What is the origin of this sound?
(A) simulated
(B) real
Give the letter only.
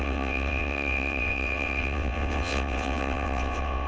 A